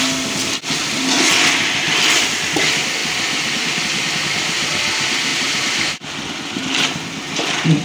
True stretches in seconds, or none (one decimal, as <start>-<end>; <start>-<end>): 0.0-3.0; 3.8-5.3; 6.1-7.8